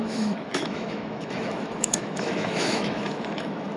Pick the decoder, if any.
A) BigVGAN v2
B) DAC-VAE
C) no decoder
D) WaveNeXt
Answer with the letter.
B